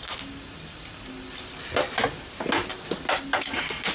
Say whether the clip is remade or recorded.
recorded